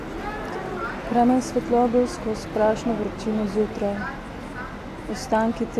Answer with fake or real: real